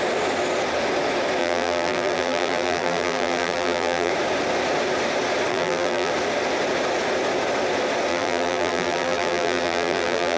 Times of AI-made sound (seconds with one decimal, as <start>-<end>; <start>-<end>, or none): 1.4-4.1; 5.5-6.1; 8.1-10.4

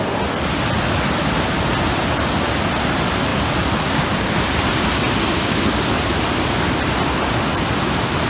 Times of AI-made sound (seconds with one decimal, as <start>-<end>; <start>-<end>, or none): 3.3-4.4

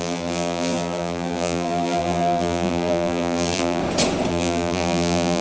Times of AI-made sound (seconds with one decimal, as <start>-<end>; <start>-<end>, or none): 0.0-3.8; 4.3-5.4

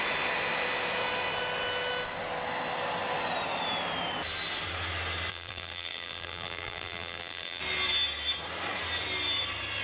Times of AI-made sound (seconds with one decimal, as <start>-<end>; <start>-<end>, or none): 5.3-7.6

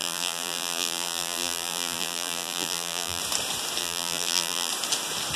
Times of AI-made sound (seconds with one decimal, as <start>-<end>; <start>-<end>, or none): 0.0-3.2; 3.8-4.7

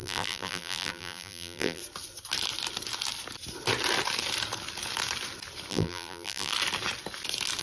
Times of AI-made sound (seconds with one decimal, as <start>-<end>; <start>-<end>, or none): 0.0-1.8; 5.7-6.5